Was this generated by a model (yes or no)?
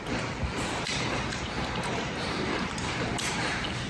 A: yes